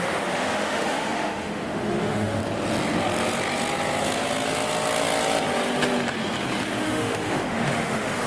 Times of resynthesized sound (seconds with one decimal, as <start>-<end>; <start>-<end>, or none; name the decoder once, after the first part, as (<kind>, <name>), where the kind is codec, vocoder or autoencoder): 0.0-2.4 (autoencoder, DAC-VAE); 6.8-8.3